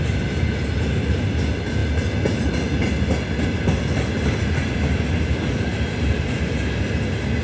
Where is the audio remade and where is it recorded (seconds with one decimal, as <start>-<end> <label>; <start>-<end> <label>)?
0.0-7.4 recorded

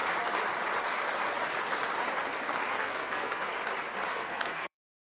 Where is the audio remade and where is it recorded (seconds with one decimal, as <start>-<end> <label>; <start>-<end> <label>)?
0.0-2.7 recorded; 2.7-3.5 remade; 3.5-4.1 recorded; 4.1-5.0 remade

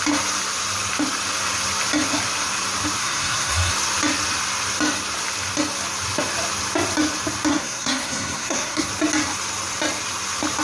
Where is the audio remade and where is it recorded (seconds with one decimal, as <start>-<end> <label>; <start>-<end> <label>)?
0.0-3.0 recorded; 3.0-3.7 remade; 3.7-7.5 recorded; 7.5-8.9 remade; 8.9-10.6 recorded

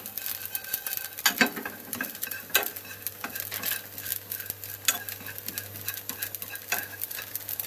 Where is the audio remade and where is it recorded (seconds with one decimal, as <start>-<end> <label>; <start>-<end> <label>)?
0.0-7.7 recorded

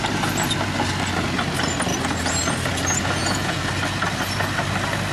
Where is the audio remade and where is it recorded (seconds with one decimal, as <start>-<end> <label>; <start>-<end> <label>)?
0.0-3.2 recorded; 3.2-3.7 remade; 3.7-5.1 recorded

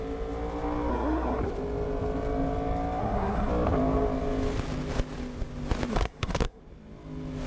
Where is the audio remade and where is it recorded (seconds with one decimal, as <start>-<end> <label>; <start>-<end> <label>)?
0.0-0.9 recorded; 0.9-1.4 remade; 1.4-3.0 recorded; 3.0-3.5 remade; 3.5-5.9 recorded; 5.9-6.6 remade; 6.6-7.5 recorded

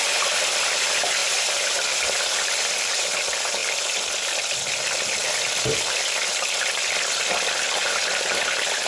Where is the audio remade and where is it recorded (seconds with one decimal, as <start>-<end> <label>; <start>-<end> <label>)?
0.0-8.9 recorded

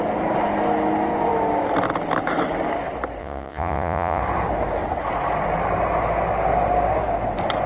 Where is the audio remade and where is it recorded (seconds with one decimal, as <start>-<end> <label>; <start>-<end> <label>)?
0.0-3.2 recorded; 3.2-4.2 remade; 4.2-7.7 recorded